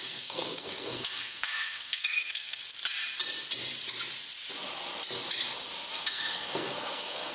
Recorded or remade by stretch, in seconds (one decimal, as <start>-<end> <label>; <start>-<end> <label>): 0.0-2.6 remade; 2.6-5.9 recorded; 5.9-7.3 remade